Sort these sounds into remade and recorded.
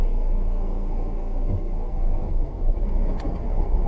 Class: remade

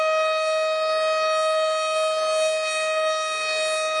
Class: recorded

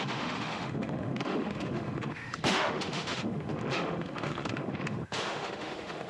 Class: remade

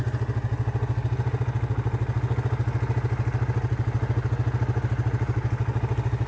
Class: recorded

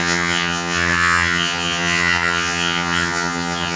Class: remade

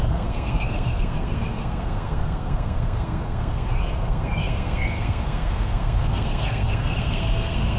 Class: remade